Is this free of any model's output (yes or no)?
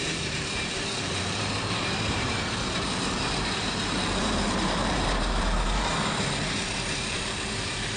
no